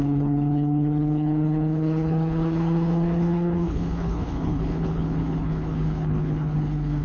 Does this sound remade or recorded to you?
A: remade